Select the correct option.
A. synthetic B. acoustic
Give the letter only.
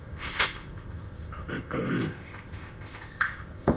A